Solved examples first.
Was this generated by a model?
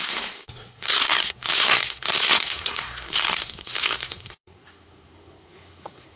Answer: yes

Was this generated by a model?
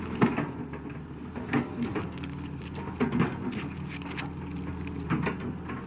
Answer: no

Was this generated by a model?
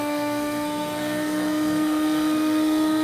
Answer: yes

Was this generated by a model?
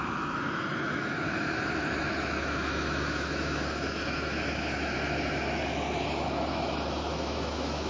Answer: yes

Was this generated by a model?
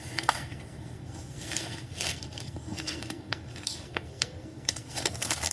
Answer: yes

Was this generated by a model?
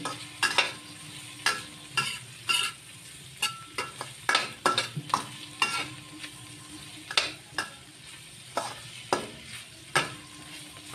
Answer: no